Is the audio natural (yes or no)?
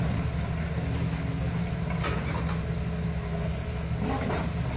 yes